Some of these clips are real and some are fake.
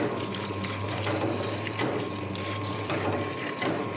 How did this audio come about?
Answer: fake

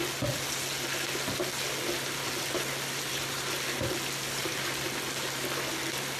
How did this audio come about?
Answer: real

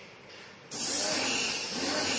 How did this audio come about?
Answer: fake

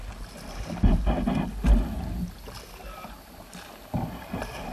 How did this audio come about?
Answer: real